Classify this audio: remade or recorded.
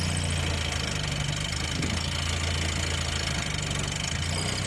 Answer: recorded